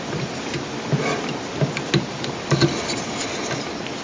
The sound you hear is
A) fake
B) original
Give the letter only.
B